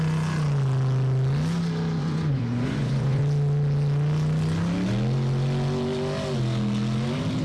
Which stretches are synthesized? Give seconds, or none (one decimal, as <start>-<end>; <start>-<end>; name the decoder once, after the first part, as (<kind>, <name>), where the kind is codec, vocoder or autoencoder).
2.0-3.2 (vocoder, Vocos)